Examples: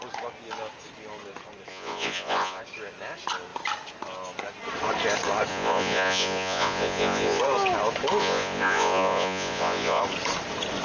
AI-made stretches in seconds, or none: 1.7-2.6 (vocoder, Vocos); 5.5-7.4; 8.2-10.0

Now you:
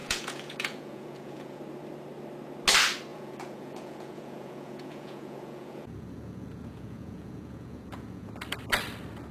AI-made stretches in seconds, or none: 0.0-1.6 (vocoder, Vocos); 3.1-8.3

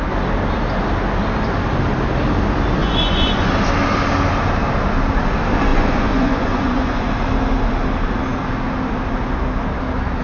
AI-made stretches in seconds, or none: 2.8-3.5 (vocoder, Vocos); 5.7-7.1

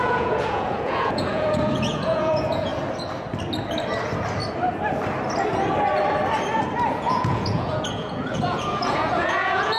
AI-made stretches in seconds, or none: 0.0-2.7 (vocoder, Vocos); 6.9-9.8

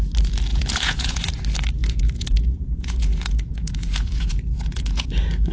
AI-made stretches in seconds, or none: 0.5-1.3 (vocoder, Vocos); 1.8-5.1